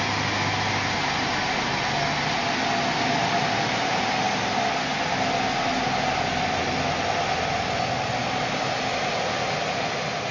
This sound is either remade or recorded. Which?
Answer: recorded